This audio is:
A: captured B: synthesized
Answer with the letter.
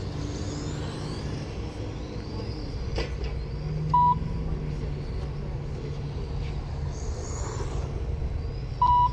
A